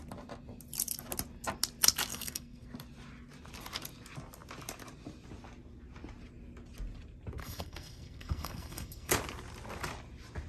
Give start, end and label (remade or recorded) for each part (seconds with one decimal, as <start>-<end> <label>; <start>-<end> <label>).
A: 0.0-2.1 recorded; 2.1-2.7 remade; 2.7-7.4 recorded; 7.4-9.1 remade; 9.1-10.5 recorded